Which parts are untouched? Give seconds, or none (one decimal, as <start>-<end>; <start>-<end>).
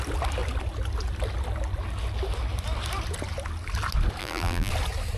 0.0-4.2; 4.7-5.2